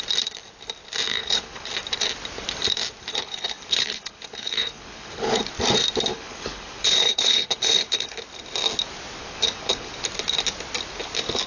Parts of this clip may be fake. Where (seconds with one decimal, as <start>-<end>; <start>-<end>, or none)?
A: 1.1-1.7; 3.2-5.4; 6.1-8.2; 9.2-9.9